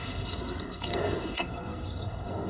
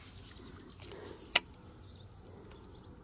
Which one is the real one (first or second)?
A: second